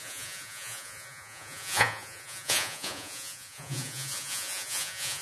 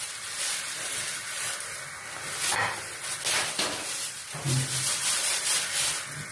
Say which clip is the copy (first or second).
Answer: first